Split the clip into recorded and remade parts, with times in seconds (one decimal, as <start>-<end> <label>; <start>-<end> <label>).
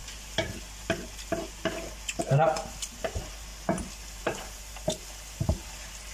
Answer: 0.0-2.2 recorded; 2.2-3.5 remade; 3.5-4.2 recorded; 4.2-6.1 remade